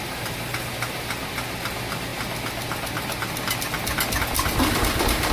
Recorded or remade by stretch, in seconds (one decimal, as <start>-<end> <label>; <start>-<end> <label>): 0.0-5.3 recorded